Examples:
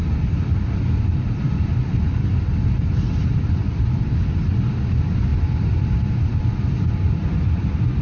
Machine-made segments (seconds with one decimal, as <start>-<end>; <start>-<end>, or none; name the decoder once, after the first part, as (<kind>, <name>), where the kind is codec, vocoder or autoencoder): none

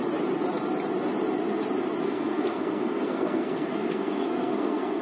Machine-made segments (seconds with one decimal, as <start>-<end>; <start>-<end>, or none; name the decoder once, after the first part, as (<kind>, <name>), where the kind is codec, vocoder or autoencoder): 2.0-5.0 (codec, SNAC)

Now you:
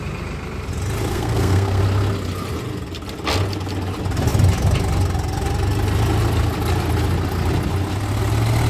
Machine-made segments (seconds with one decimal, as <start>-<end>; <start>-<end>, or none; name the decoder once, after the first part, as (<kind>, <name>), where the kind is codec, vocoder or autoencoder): 1.1-1.8 (codec, SNAC)

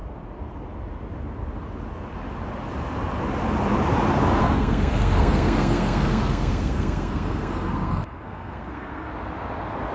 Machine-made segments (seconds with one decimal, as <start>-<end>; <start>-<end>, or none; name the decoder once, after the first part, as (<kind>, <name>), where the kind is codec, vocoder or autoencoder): 4.4-9.1 (codec, SNAC)

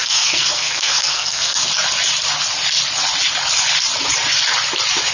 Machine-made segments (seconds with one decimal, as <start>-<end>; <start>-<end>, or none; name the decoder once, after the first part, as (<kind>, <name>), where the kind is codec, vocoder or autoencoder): 0.0-1.6 (codec, SNAC)

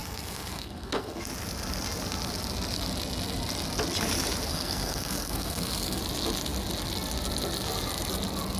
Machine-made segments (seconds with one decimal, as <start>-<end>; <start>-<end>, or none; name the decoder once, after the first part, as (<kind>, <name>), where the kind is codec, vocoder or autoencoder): 0.0-1.2 (codec, SNAC); 4.5-6.0